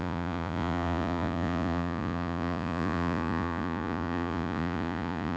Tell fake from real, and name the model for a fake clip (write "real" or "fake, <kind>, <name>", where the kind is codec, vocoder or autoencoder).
fake, vocoder, Vocos